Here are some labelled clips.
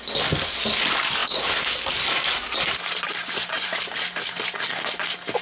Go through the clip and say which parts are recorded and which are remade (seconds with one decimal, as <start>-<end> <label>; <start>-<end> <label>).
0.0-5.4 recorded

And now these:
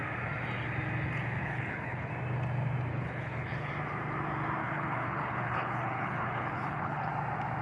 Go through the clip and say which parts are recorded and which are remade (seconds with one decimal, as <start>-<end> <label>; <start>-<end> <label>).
0.0-1.4 recorded; 1.4-2.1 remade; 2.1-2.9 recorded; 2.9-3.7 remade; 3.7-4.6 recorded; 4.6-7.1 remade; 7.1-7.6 recorded

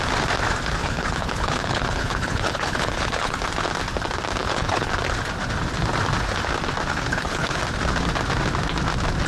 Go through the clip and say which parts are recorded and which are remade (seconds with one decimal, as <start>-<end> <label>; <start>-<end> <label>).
0.0-0.8 recorded; 0.8-3.4 remade; 3.4-4.4 recorded; 4.4-4.9 remade; 4.9-6.9 recorded; 6.9-7.6 remade; 7.6-9.3 recorded

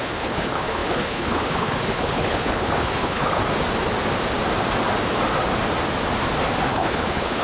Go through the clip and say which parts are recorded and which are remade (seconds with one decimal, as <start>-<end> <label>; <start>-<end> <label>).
0.0-3.4 remade; 3.4-6.7 recorded; 6.7-7.4 remade

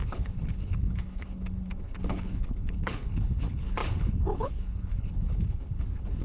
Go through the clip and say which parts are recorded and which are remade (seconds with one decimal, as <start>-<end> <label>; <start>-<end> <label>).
0.0-6.2 remade

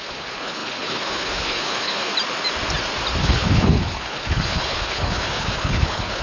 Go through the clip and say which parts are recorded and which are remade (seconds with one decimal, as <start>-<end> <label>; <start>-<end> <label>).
0.0-2.1 remade; 2.1-3.2 recorded; 3.2-6.2 remade

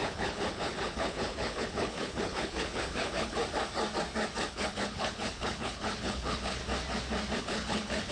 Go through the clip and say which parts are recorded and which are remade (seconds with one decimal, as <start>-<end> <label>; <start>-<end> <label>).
0.0-3.4 remade; 3.4-4.5 recorded; 4.5-6.6 remade; 6.6-7.4 recorded; 7.4-8.1 remade

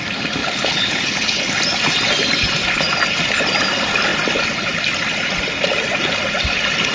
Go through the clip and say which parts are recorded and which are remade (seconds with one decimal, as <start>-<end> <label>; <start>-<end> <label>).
0.0-0.4 recorded; 0.4-1.4 remade; 1.4-6.9 recorded